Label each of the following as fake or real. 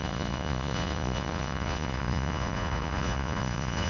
fake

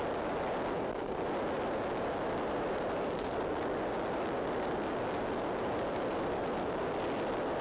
real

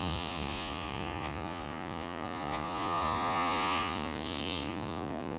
fake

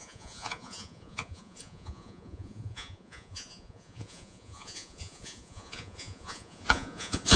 fake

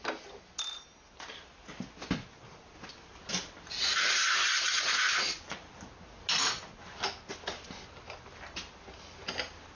real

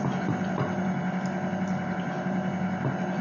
real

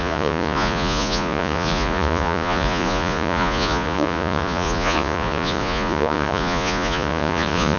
fake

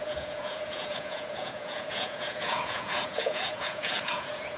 fake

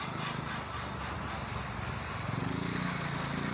real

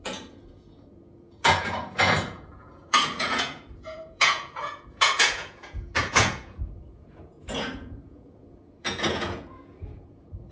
fake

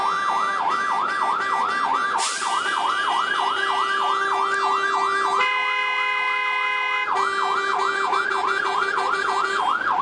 real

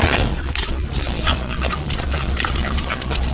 fake